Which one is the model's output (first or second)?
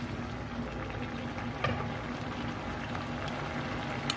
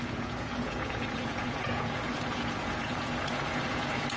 second